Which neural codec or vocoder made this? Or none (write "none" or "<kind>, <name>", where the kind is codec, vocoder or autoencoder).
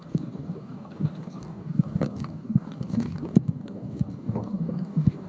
codec, DAC